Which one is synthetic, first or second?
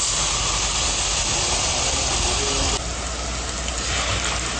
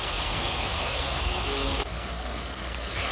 second